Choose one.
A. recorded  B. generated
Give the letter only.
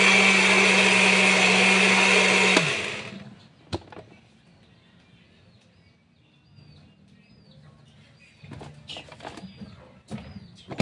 A